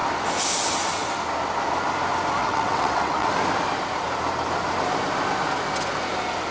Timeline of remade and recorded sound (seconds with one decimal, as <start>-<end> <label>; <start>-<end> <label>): 0.0-2.4 recorded; 2.4-3.3 remade; 3.3-6.5 recorded